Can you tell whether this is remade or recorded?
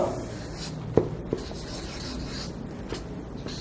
remade